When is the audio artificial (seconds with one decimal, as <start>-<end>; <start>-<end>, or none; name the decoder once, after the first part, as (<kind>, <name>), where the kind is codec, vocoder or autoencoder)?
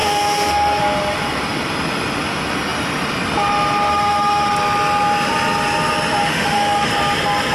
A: 0.0-0.8 (autoencoder, DAC-VAE); 3.9-4.5; 6.3-6.9